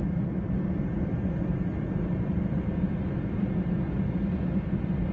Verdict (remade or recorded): recorded